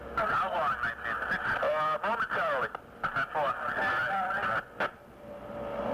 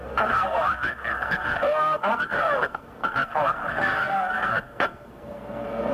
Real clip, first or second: first